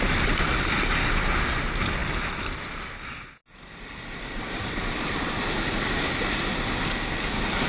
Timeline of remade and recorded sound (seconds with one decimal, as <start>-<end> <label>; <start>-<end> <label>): 0.0-7.7 recorded